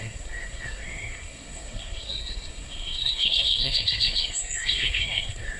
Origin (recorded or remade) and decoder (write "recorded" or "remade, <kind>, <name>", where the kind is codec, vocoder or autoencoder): remade, codec, SNAC